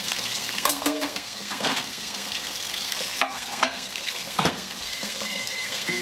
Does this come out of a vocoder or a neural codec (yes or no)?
yes